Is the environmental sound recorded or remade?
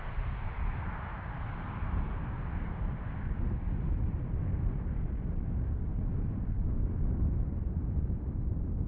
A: recorded